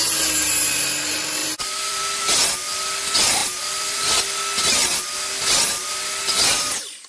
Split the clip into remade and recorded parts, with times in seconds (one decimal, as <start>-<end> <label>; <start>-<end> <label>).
0.0-1.4 recorded; 1.4-2.0 remade; 2.0-3.4 recorded; 3.4-4.1 remade; 4.1-7.1 recorded